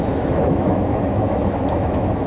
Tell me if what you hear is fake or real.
fake